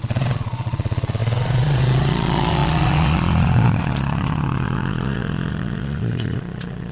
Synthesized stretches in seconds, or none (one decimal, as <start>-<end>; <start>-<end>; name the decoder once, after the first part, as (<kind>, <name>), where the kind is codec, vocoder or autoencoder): 0.0-6.9 (vocoder, Vocos)